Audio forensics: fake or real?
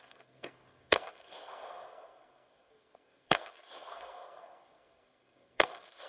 fake